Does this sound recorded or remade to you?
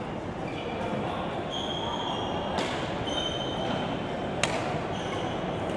recorded